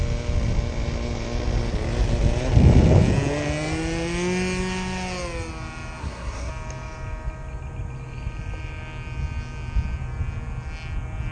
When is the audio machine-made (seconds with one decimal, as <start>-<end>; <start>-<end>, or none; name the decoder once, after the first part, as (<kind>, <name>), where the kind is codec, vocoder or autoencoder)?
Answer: 6.0-6.5 (codec, SNAC)